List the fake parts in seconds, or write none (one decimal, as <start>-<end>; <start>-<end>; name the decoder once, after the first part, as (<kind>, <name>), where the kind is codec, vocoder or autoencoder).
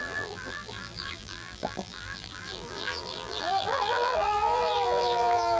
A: 0.0-5.6 (vocoder, BigVGAN v2)